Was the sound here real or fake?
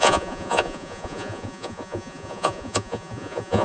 fake